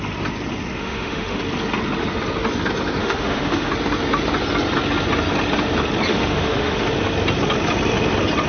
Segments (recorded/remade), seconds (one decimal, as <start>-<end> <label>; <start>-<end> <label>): 0.0-0.8 recorded; 0.8-1.4 remade; 1.4-3.0 recorded; 3.0-3.7 remade; 3.7-6.1 recorded; 6.1-6.9 remade; 6.9-8.5 recorded